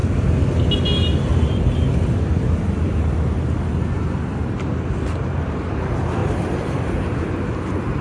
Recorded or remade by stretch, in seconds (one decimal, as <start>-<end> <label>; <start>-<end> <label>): 0.0-6.2 recorded; 6.2-7.3 remade; 7.3-8.0 recorded